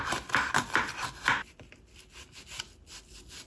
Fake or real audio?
real